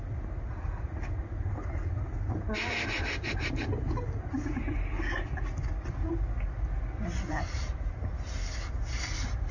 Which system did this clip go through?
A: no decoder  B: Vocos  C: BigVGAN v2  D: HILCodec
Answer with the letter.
A